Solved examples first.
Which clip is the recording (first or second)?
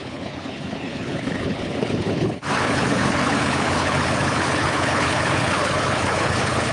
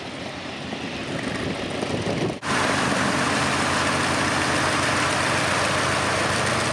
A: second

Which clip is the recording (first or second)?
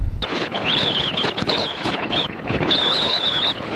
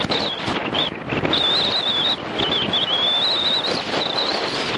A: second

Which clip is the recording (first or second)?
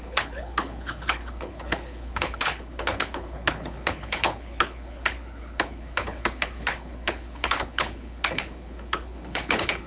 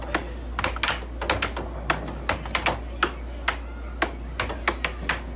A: second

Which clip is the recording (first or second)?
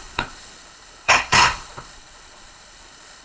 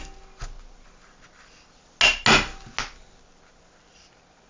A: second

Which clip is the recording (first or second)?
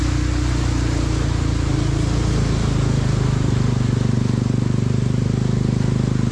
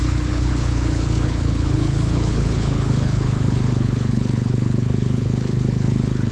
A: first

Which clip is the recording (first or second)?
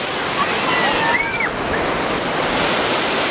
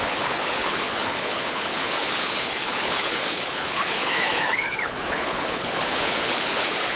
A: first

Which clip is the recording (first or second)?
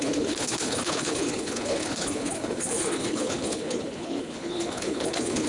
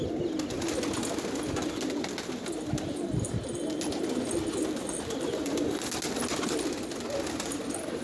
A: second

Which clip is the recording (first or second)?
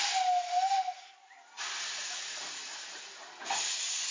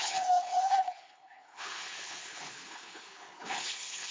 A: first